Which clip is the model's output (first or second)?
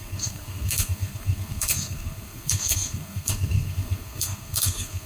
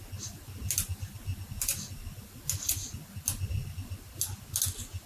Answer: first